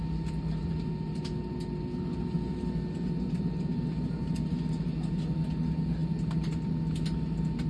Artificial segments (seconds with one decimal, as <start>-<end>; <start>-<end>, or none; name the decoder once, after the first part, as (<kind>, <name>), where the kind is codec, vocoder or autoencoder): 0.6-1.2 (vocoder, BigVGAN v2)